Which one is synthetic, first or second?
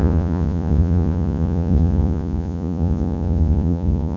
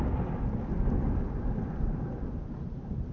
first